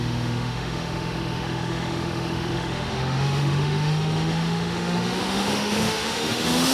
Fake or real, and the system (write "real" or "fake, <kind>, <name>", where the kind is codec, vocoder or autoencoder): fake, autoencoder, DAC-VAE